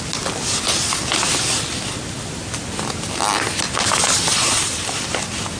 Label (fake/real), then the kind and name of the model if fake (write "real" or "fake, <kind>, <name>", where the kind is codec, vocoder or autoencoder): real